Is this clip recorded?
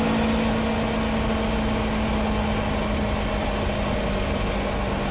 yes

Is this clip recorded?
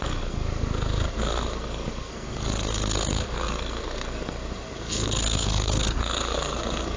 no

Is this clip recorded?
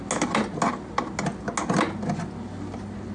yes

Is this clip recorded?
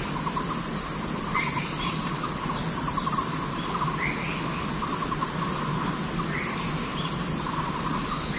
yes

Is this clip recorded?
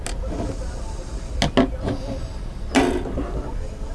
yes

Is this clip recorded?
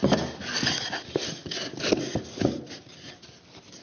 yes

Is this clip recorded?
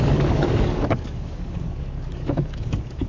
no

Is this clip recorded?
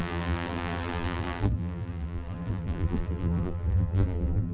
no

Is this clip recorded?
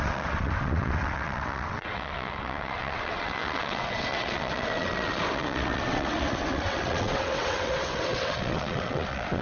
no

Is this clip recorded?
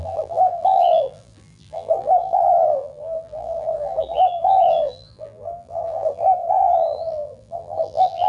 no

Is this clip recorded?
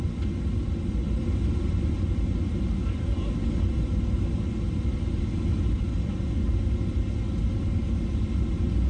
yes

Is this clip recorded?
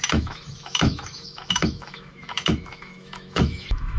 no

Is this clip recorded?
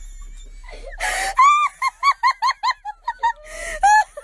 yes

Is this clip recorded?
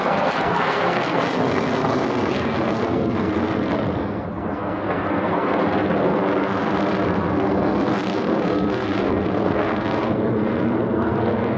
no